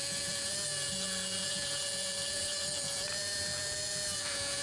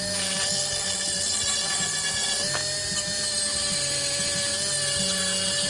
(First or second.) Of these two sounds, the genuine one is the second